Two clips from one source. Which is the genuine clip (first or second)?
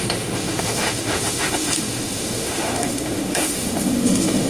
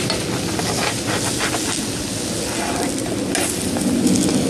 second